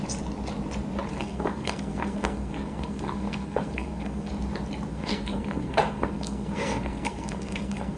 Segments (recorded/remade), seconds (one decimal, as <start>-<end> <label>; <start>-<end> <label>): 0.0-1.1 recorded; 1.1-4.3 remade; 4.3-4.9 recorded; 4.9-8.0 remade